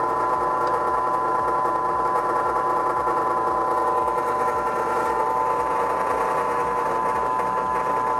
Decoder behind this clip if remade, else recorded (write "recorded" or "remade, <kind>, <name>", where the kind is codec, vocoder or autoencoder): recorded